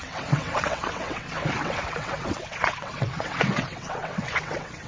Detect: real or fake fake